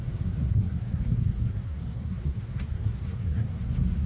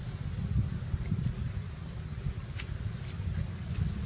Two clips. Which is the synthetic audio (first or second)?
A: first